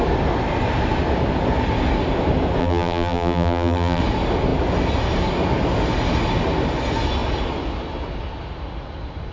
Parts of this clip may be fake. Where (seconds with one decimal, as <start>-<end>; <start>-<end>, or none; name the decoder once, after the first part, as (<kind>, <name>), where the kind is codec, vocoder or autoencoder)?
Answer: 2.6-4.0 (vocoder, BigVGAN v2)